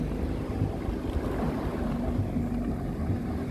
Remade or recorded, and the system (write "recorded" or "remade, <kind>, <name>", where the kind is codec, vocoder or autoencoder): recorded